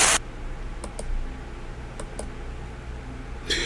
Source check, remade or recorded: recorded